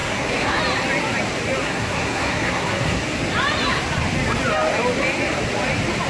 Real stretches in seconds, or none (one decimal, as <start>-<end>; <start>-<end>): 0.6-1.6; 3.0-6.1